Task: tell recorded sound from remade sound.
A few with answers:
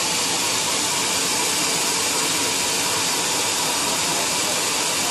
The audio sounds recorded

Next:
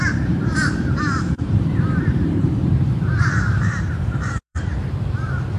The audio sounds remade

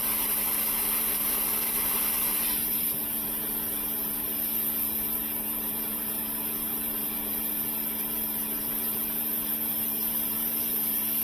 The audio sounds remade